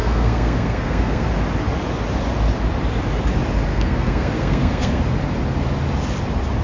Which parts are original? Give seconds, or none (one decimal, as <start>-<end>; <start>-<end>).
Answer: 1.3-3.7; 5.0-6.6